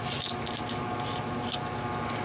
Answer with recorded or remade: recorded